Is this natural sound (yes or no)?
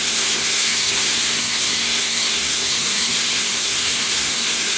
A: no